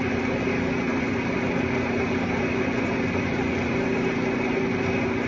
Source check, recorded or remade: recorded